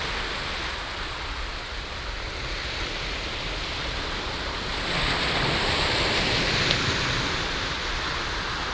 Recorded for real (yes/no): yes